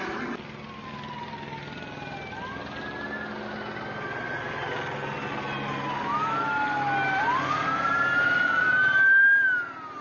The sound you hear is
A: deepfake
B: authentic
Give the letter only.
B